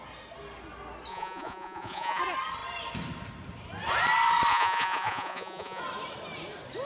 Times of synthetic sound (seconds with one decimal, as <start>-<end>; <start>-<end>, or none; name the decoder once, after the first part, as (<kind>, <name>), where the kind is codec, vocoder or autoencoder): 1.1-2.2 (vocoder, Vocos); 4.5-5.8